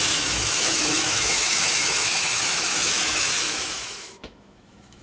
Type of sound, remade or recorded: remade